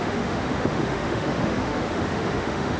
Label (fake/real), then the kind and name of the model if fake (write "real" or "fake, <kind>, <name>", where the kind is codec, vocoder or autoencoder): fake, autoencoder, DAC-VAE